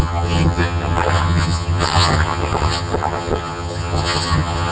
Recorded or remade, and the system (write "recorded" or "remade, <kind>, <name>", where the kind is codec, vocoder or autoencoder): remade, vocoder, HiFi-GAN